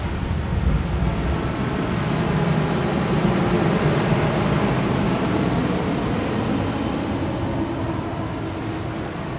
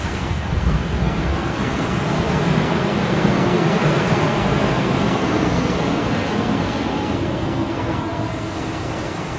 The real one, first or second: first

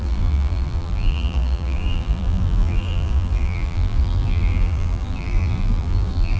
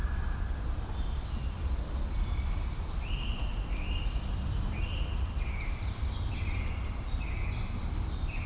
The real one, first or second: second